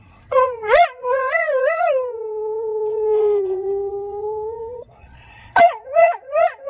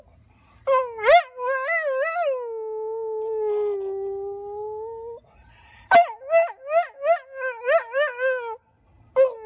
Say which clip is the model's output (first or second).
first